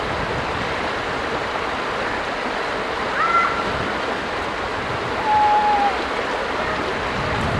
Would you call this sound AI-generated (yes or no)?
no